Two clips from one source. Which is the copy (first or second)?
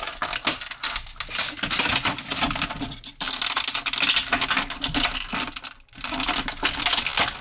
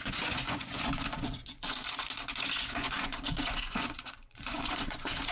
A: second